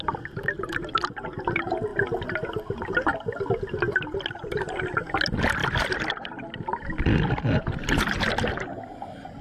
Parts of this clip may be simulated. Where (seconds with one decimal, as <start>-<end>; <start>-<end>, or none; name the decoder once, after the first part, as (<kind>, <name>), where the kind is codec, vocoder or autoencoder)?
none